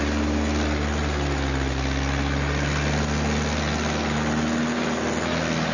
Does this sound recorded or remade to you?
recorded